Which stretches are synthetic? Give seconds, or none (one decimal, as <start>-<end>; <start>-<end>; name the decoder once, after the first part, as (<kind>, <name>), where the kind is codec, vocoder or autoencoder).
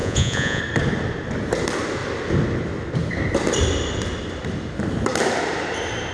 0.0-0.6 (vocoder, Vocos)